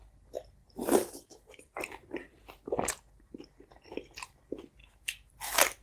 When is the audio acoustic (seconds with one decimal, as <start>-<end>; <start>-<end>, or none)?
0.0-1.0; 1.8-4.8; 5.3-5.8